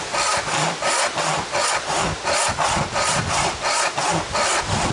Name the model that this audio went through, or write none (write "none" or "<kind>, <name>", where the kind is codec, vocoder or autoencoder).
none